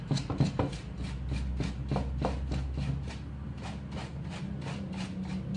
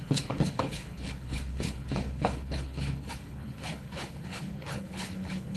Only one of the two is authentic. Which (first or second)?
first